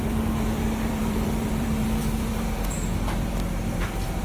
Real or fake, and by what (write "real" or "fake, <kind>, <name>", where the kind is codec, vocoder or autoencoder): fake, vocoder, BigVGAN v2